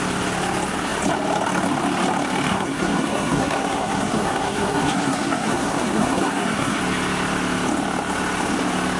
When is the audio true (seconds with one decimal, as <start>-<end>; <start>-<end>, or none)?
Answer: 0.0-2.5; 6.8-9.0